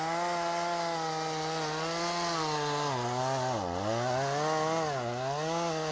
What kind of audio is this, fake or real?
real